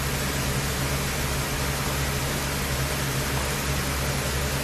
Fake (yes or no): no